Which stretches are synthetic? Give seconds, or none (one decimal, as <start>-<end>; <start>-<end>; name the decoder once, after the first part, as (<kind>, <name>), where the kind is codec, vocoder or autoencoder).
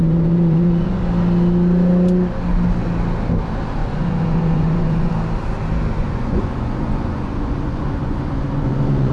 0.0-1.0 (vocoder, Vocos); 3.8-5.1; 6.0-9.1